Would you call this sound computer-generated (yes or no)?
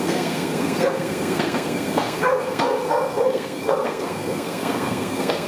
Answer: yes